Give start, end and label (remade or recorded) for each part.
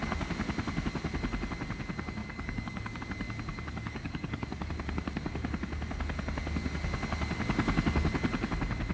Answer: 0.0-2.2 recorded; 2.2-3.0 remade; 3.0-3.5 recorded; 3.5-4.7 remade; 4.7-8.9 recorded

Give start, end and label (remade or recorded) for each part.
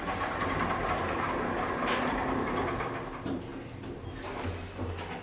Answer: 0.0-3.5 remade; 3.5-4.7 recorded; 4.7-5.2 remade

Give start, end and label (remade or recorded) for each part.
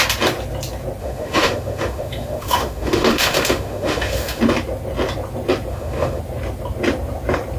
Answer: 0.0-1.0 recorded; 1.0-4.4 remade; 4.4-5.7 recorded; 5.7-6.2 remade; 6.2-7.6 recorded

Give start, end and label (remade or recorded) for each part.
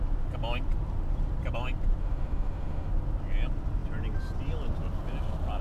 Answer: 0.0-2.0 recorded; 2.0-2.9 remade; 2.9-5.6 recorded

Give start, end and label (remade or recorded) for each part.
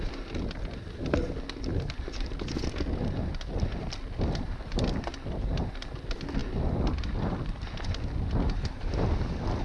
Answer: 0.0-9.6 recorded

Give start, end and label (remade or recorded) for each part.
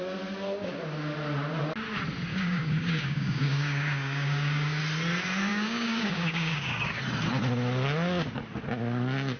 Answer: 0.0-2.3 recorded; 2.3-4.8 remade; 4.8-5.5 recorded; 5.5-7.0 remade; 7.0-9.4 recorded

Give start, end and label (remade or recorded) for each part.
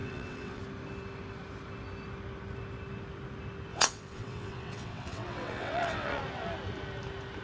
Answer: 0.0-0.6 remade; 0.6-3.7 recorded; 3.7-6.2 remade; 6.2-7.4 recorded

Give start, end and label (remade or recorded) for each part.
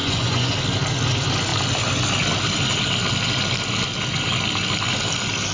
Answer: 0.0-0.5 remade; 0.5-5.5 recorded